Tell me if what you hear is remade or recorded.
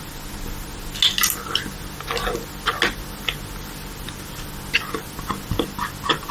recorded